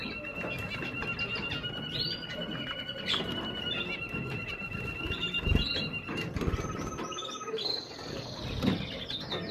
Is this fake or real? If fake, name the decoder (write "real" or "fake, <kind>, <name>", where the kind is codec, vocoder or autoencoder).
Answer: real